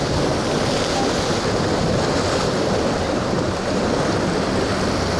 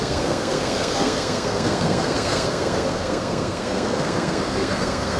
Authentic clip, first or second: first